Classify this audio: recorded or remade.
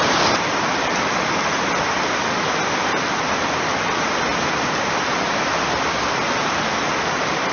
recorded